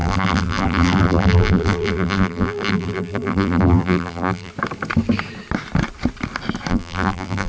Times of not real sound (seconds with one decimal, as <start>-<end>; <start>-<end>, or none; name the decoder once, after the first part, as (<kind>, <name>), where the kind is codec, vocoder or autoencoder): 0.0-4.5 (vocoder, BigVGAN v2); 6.7-7.5